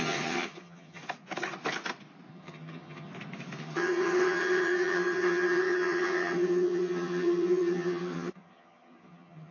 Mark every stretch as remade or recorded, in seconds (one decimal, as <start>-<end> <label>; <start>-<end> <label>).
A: 0.0-1.0 remade; 1.0-2.3 recorded; 2.3-3.1 remade; 3.1-3.6 recorded; 3.6-9.5 remade